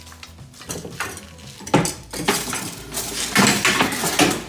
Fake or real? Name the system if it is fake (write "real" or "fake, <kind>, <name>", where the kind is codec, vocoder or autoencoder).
real